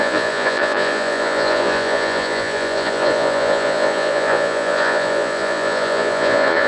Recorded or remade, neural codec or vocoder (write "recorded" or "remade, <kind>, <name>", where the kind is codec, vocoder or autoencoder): remade, vocoder, Vocos